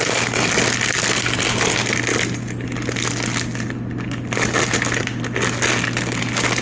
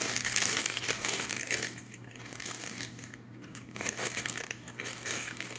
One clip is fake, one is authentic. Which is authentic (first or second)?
first